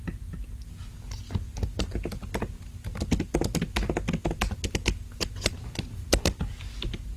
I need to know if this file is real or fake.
real